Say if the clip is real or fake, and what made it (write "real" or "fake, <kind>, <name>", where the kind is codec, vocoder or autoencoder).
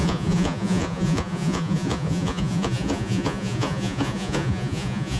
fake, vocoder, Vocos